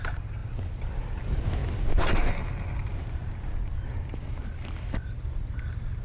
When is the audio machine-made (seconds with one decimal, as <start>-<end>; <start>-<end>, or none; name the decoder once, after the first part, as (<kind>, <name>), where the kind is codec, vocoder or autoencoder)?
none